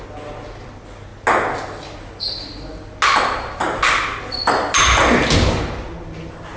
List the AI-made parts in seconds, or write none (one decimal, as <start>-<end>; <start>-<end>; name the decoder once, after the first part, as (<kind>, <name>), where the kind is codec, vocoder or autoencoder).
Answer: none